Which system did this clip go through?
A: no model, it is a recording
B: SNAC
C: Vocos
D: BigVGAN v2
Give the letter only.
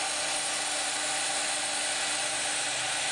A